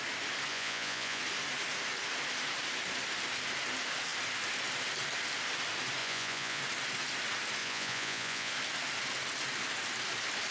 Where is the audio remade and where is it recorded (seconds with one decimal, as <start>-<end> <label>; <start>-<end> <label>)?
0.0-0.5 recorded; 0.5-1.2 remade; 1.2-6.0 recorded; 6.0-6.6 remade; 6.6-7.6 recorded; 7.6-8.5 remade; 8.5-10.5 recorded

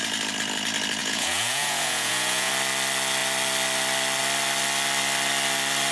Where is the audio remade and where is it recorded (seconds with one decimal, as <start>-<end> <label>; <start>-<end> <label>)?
0.0-1.0 recorded; 1.0-2.5 remade; 2.5-5.9 recorded